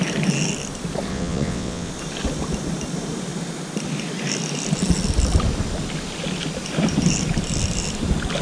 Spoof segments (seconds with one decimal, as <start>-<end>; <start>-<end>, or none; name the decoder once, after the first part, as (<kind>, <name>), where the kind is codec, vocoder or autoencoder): 1.1-1.9 (vocoder, WaveNeXt)

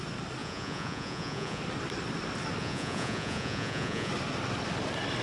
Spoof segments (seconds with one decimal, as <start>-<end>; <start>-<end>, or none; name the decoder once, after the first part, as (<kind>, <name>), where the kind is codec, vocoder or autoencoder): 0.4-1.6 (vocoder, Vocos); 2.6-4.1

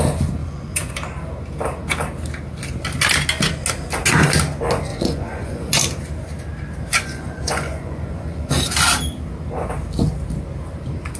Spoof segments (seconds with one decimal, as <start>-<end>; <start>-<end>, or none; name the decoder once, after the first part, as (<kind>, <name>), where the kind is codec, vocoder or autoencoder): 0.4-0.9 (vocoder, Vocos); 4.9-5.8; 6.9-8.6

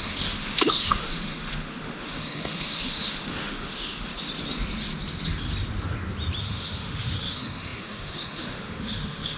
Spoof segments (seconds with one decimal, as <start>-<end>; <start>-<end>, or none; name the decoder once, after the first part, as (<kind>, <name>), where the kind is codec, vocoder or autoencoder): 0.0-4.1 (autoencoder, DAC-VAE); 6.4-9.4

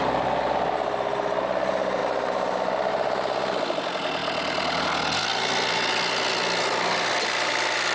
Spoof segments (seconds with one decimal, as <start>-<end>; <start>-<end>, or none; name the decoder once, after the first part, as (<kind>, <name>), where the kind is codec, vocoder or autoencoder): none

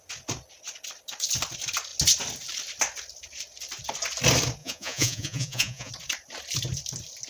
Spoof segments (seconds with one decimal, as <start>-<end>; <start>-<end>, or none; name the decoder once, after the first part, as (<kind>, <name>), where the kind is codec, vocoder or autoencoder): 4.6-5.9 (vocoder, Vocos)

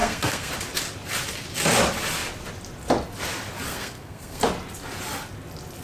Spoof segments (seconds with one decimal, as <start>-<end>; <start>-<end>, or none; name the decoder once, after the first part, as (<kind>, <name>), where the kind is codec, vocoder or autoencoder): 0.0-0.5 (codec, SNAC); 3.7-4.4

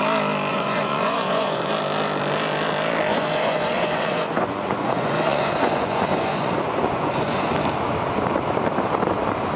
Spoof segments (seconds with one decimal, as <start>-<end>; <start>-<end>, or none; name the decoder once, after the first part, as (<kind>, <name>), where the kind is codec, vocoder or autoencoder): 0.5-1.7 (vocoder, Vocos); 3.1-7.5